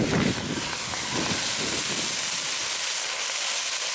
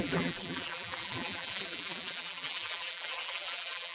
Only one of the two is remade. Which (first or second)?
second